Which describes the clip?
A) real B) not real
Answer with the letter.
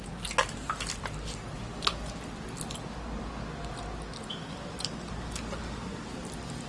A